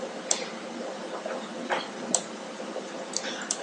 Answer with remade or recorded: recorded